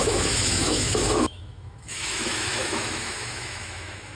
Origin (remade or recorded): remade